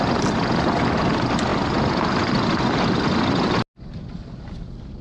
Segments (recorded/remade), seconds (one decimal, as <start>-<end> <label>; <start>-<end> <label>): 0.0-5.0 recorded

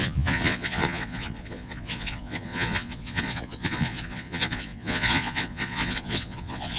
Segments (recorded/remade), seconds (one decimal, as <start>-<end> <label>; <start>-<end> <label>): 0.0-6.8 remade